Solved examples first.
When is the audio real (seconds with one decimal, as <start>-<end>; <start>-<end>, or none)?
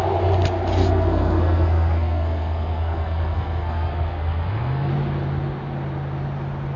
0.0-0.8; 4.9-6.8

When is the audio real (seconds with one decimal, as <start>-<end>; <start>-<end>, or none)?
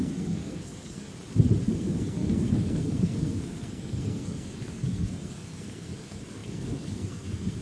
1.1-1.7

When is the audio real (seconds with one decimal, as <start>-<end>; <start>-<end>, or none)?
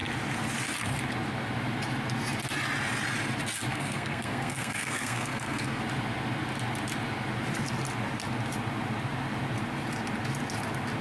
0.0-3.7; 5.8-11.0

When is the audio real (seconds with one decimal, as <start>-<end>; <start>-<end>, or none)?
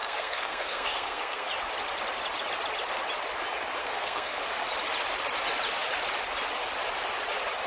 1.5-3.8; 4.4-7.7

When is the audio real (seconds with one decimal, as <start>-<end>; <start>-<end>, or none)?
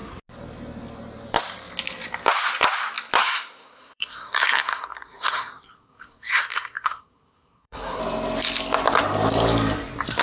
0.0-3.2; 8.0-10.2